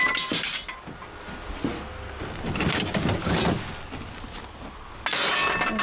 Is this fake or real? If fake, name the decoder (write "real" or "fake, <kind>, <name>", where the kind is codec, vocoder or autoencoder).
real